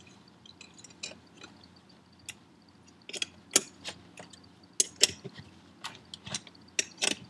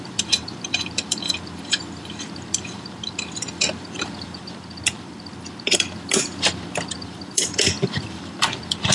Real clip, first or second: first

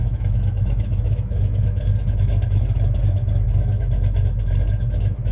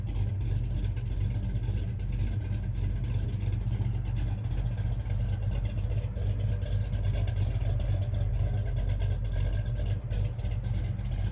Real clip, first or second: second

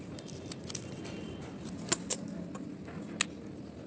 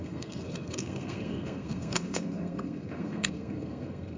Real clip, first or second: first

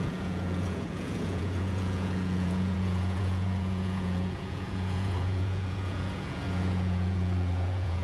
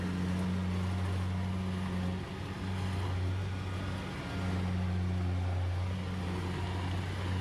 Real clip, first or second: second